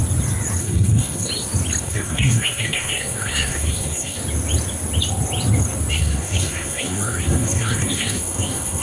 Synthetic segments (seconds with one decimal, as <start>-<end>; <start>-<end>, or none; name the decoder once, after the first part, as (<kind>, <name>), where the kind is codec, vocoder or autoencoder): 0.6-1.3 (codec, SNAC); 1.8-4.2; 5.9-8.8